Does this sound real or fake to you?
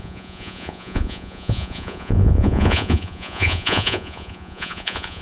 fake